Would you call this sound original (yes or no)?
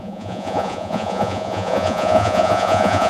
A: no